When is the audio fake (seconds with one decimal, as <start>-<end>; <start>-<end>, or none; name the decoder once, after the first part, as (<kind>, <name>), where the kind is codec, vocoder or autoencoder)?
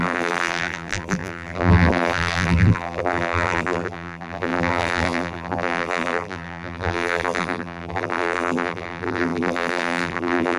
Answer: 0.0-10.6 (vocoder, BigVGAN v2)